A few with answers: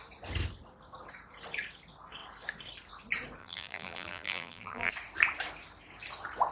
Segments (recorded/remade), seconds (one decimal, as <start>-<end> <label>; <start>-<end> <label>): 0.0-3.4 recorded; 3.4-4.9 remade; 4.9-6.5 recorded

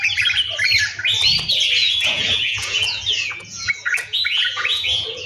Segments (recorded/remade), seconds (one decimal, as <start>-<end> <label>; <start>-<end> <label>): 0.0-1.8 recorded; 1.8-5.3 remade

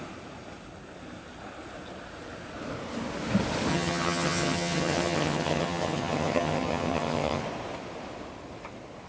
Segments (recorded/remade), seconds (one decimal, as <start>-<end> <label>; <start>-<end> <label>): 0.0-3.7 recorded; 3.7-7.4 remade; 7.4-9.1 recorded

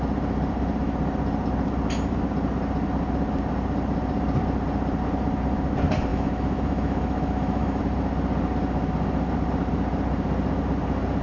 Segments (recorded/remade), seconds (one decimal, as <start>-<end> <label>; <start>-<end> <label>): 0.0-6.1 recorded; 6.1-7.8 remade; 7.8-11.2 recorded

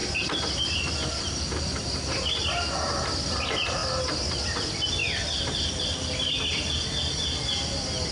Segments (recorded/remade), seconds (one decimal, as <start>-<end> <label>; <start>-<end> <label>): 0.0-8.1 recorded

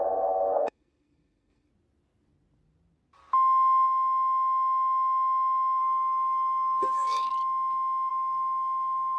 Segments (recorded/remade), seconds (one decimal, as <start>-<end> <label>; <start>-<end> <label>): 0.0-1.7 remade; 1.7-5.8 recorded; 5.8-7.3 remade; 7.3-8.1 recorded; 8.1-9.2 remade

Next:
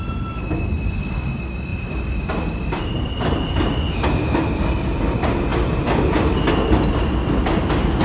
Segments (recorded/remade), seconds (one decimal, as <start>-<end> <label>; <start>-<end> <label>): 0.0-1.7 recorded; 1.7-2.8 remade; 2.8-5.5 recorded; 5.5-6.3 remade; 6.3-8.0 recorded

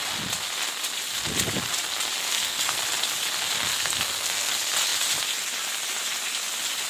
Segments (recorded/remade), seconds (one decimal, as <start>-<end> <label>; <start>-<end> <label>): 0.0-2.2 recorded; 2.2-2.8 remade; 2.8-3.7 recorded; 3.7-4.5 remade; 4.5-6.9 recorded